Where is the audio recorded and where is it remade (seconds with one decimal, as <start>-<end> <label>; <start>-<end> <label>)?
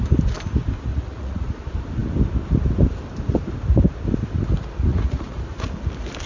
0.0-0.9 recorded; 0.9-1.6 remade; 1.6-4.9 recorded; 4.9-5.4 remade; 5.4-6.3 recorded